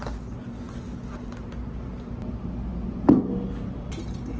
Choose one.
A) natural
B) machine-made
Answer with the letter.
A